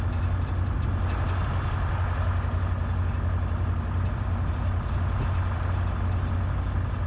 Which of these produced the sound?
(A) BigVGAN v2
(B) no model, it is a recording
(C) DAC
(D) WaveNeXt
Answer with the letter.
B